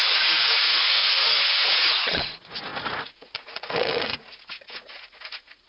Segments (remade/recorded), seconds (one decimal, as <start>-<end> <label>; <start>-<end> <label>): 0.0-1.0 remade; 1.0-1.6 recorded; 1.6-5.7 remade